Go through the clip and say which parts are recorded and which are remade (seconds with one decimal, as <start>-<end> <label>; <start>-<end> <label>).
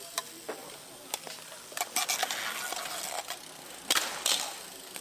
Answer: 0.0-5.0 recorded